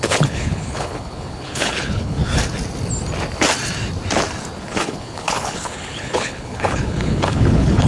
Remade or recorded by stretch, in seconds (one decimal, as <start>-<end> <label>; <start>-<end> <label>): 0.0-2.2 remade; 2.2-4.6 recorded; 4.6-7.9 remade